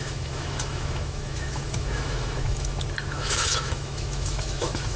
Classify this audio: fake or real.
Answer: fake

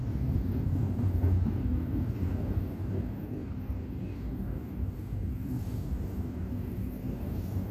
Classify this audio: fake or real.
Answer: fake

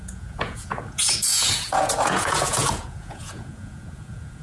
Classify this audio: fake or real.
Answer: fake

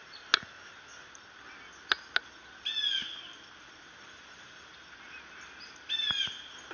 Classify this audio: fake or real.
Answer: real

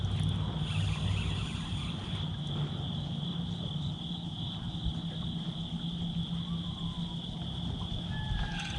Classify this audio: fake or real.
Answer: real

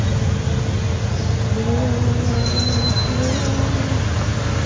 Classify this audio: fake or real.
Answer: real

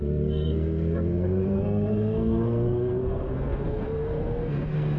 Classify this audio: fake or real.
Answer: fake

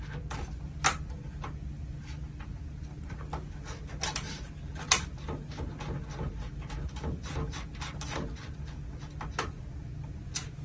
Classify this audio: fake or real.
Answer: real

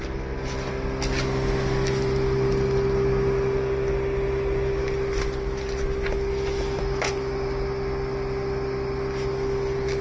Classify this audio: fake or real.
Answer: real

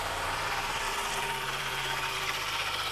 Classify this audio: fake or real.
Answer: fake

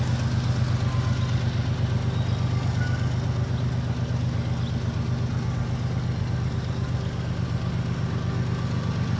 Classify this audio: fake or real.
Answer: real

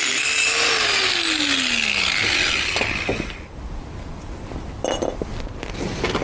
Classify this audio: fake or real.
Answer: real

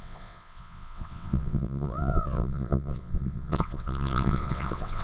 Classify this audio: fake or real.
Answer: fake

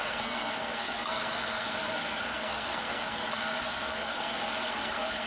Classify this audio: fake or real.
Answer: fake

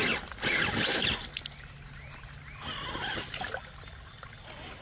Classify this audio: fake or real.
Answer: real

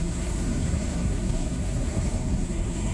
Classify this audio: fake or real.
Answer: fake